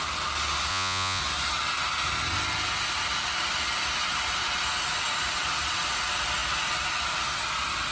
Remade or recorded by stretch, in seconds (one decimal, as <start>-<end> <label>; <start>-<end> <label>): 0.0-0.7 recorded; 0.7-1.2 remade; 1.2-7.9 recorded